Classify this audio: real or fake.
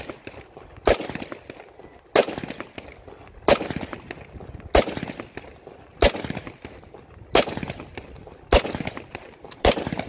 real